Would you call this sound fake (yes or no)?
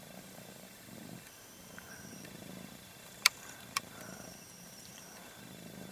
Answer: yes